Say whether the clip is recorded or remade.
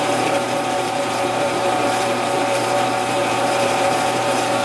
remade